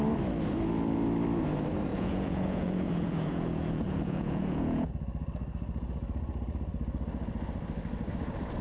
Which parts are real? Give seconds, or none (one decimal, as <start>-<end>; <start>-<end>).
0.0-1.9; 4.9-8.6